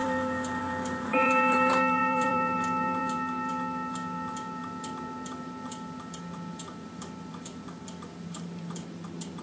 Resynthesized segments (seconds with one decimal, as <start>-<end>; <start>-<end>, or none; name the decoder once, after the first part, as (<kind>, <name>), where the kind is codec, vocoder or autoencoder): 0.0-9.4 (vocoder, BigVGAN v2)